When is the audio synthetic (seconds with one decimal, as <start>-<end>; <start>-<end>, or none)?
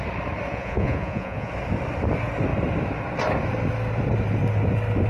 0.5-1.5